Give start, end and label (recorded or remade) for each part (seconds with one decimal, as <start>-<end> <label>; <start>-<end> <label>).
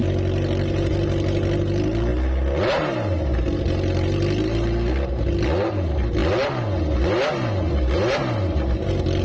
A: 0.0-9.2 recorded